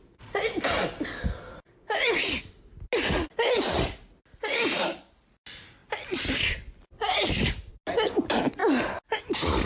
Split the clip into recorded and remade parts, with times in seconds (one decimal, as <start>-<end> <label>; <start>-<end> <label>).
0.0-9.7 recorded